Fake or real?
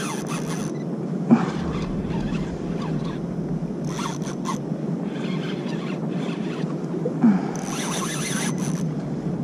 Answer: real